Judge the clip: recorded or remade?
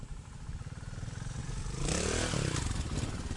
remade